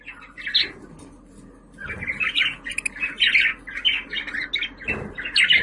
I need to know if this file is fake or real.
real